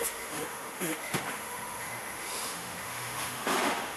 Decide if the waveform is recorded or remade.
remade